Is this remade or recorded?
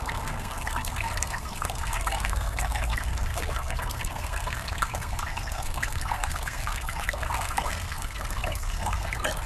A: remade